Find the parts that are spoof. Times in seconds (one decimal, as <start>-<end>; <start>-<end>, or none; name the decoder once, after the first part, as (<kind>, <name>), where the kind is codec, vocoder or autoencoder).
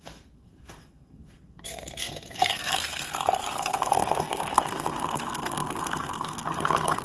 0.0-7.0 (codec, SNAC)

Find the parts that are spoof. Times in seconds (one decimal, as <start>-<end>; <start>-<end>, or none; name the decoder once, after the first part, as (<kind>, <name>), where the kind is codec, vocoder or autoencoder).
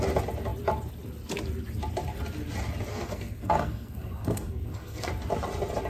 2.9-5.1 (codec, SNAC)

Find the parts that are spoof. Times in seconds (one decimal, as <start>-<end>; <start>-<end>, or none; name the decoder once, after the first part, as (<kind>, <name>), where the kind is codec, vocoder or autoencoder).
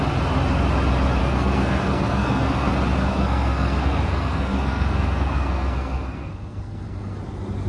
1.2-2.7 (codec, SNAC); 3.1-7.2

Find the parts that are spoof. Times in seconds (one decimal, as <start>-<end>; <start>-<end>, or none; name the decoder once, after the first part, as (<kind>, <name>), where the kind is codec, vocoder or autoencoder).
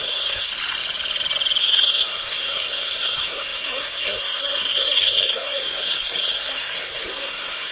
0.0-0.5 (codec, SNAC); 1.6-7.7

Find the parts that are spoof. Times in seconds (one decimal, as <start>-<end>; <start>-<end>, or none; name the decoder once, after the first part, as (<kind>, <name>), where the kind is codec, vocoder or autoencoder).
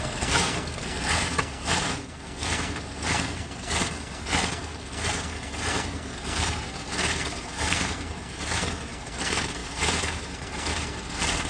0.0-11.5 (codec, SNAC)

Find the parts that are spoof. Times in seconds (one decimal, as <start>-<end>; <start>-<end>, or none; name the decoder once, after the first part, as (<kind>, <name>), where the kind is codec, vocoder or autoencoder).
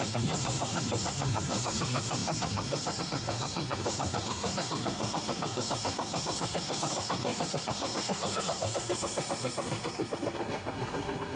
0.0-11.4 (codec, SNAC)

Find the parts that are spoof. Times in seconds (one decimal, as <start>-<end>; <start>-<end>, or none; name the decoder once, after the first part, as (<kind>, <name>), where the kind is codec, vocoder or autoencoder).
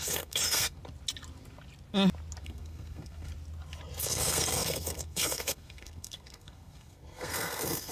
0.0-0.8 (codec, SNAC); 2.4-3.3; 4.0-7.9